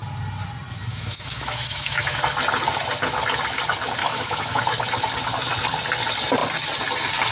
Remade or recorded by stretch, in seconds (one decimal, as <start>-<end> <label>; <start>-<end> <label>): 0.0-0.9 recorded; 0.9-2.2 remade; 2.2-4.0 recorded; 4.0-4.6 remade; 4.6-7.3 recorded